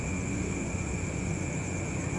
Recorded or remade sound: remade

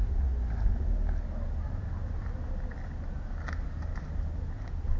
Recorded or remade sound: recorded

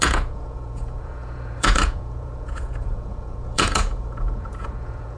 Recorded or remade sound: remade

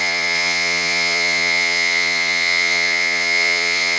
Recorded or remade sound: remade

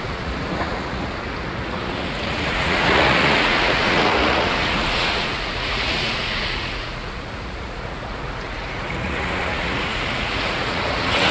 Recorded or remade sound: remade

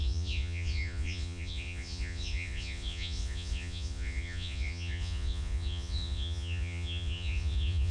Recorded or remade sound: remade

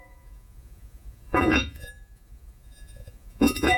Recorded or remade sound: remade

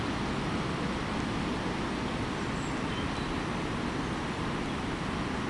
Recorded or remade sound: recorded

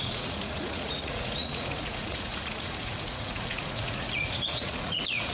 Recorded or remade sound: remade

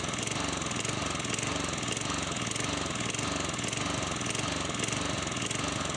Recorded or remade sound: recorded